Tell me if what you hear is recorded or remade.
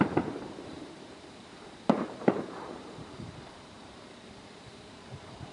remade